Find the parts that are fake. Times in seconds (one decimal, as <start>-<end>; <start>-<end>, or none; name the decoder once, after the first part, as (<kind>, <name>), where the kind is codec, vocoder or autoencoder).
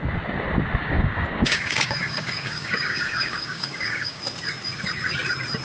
0.8-4.2 (codec, DAC)